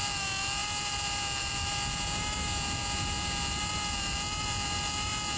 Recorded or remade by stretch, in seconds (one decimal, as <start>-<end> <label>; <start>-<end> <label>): 0.0-5.4 recorded